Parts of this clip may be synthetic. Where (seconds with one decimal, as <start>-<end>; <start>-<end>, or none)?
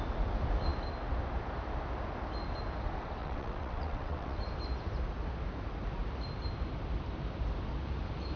3.2-4.4